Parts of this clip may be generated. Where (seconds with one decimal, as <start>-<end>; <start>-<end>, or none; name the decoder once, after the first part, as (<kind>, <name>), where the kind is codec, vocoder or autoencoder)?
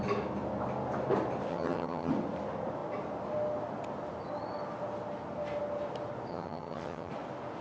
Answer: 1.5-2.1 (vocoder, HiFi-GAN); 6.3-7.1